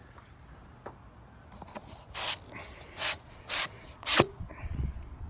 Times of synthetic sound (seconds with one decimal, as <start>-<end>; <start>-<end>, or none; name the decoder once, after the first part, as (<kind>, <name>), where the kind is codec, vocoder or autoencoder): 2.9-5.3 (vocoder, Vocos)